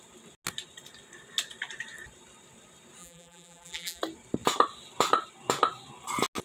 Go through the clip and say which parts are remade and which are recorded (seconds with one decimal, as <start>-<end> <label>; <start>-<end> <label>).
0.0-3.0 recorded; 3.0-4.0 remade; 4.0-6.4 recorded